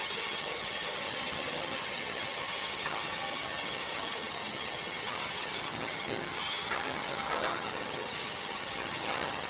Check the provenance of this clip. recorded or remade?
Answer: remade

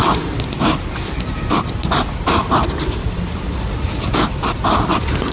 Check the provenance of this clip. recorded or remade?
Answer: recorded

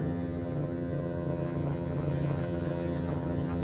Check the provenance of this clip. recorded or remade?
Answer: remade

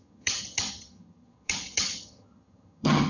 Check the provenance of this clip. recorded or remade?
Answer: remade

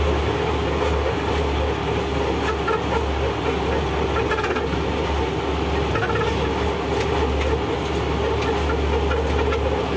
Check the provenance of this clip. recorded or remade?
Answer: recorded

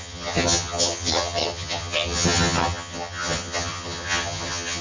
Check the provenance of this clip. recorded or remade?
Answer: remade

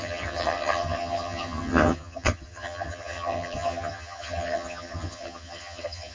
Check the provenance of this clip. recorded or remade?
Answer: remade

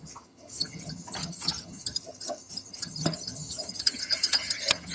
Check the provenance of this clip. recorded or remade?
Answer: remade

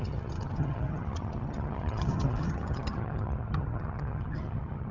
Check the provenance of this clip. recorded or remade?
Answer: remade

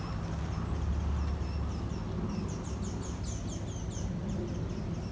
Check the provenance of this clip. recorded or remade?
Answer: recorded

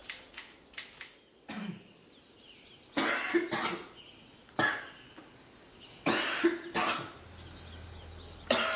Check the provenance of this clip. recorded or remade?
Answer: recorded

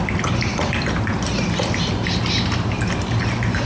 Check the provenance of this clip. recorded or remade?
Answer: recorded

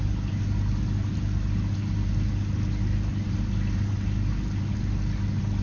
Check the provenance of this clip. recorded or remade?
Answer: recorded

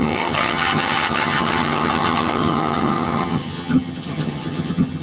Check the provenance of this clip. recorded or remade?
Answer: remade